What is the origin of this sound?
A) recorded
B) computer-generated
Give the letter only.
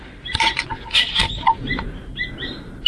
A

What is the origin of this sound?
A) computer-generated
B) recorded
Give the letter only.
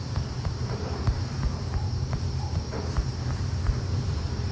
A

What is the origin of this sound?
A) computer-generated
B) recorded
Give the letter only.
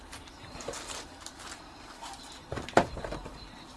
A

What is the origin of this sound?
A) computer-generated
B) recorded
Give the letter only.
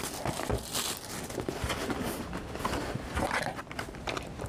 A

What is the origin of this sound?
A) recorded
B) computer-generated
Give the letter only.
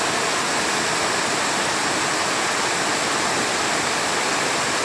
A